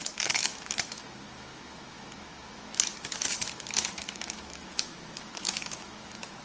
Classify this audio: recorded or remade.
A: remade